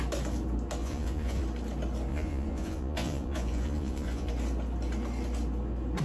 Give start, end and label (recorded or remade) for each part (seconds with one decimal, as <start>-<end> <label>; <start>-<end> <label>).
0.0-0.8 recorded; 0.8-1.4 remade; 1.4-2.1 recorded; 2.1-4.3 remade; 4.3-6.0 recorded